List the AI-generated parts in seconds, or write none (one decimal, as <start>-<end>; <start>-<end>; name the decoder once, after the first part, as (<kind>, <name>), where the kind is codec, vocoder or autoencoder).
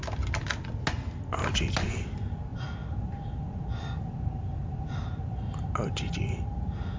2.5-7.0 (vocoder, BigVGAN v2)